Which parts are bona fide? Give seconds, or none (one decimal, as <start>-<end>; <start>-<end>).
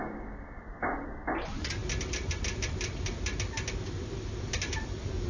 0.0-5.3